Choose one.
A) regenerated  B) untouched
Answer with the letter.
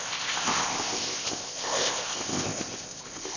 A